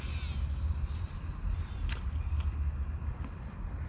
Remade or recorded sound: recorded